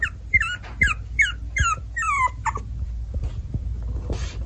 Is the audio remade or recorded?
recorded